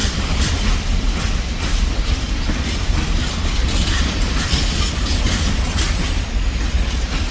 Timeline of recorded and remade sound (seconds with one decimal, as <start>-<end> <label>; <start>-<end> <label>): 0.0-4.4 remade; 4.4-7.3 recorded

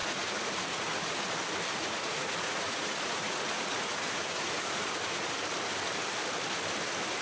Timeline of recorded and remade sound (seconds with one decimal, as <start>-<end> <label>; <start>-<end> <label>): 0.0-1.3 remade; 1.3-1.8 recorded; 1.8-5.4 remade; 5.4-7.2 recorded

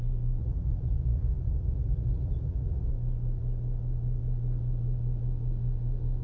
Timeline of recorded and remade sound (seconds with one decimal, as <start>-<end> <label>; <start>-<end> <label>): 0.0-0.4 recorded; 0.4-2.9 remade; 2.9-6.2 recorded

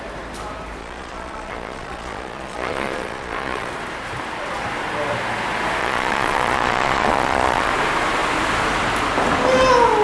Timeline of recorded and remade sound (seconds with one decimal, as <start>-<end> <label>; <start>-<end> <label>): 0.0-0.8 recorded; 0.8-3.7 remade; 3.7-5.8 recorded; 5.8-7.7 remade; 7.7-10.0 recorded

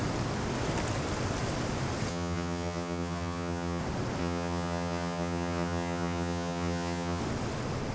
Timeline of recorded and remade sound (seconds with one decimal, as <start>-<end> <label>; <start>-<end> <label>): 0.0-2.1 recorded; 2.1-3.8 remade; 3.8-4.2 recorded; 4.2-7.2 remade; 7.2-7.9 recorded